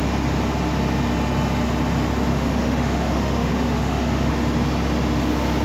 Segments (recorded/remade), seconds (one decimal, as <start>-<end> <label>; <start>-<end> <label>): 0.0-2.3 recorded; 2.3-4.3 remade; 4.3-5.6 recorded